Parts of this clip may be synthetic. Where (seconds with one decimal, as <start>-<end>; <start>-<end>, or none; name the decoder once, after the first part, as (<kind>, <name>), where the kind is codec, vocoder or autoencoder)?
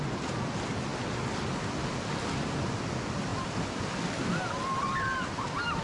none